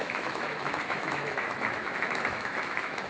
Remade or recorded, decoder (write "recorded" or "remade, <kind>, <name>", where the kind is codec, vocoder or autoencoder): remade, autoencoder, DAC-VAE